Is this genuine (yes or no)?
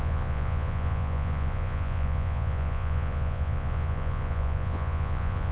no